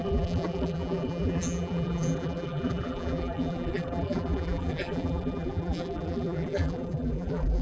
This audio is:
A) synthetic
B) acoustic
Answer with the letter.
A